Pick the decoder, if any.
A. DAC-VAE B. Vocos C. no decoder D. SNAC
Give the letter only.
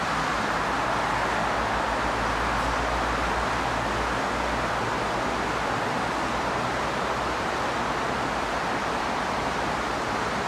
C